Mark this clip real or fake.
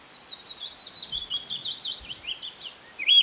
real